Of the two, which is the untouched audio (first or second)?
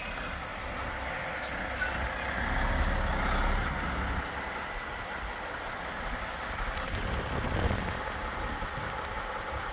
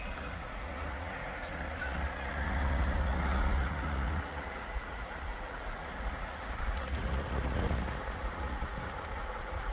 first